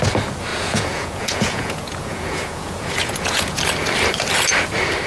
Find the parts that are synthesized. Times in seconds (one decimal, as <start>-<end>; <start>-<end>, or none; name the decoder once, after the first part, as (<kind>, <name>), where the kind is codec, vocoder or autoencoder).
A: 0.5-3.6 (vocoder, Vocos)